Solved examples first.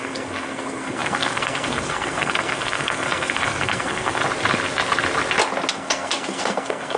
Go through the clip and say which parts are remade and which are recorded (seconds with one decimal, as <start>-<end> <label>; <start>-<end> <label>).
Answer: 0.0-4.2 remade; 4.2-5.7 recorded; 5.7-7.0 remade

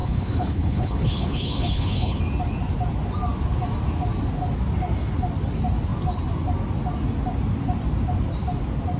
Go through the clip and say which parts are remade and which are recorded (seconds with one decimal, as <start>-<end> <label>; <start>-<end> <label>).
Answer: 0.0-2.2 remade; 2.2-9.0 recorded

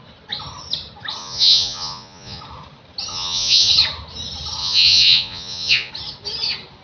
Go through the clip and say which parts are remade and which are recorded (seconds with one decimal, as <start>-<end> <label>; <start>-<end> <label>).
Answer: 0.0-1.2 recorded; 1.2-2.4 remade; 2.4-3.1 recorded; 3.1-3.7 remade; 3.7-4.6 recorded; 4.6-5.9 remade; 5.9-6.8 recorded